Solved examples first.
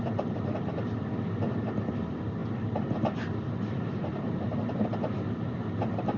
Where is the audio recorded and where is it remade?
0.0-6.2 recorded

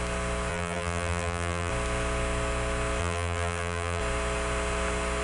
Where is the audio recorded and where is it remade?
0.0-0.5 recorded; 0.5-1.7 remade; 1.7-3.0 recorded; 3.0-4.0 remade; 4.0-5.2 recorded